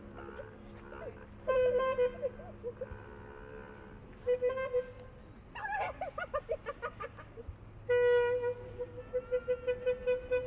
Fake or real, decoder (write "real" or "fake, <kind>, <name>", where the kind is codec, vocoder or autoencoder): real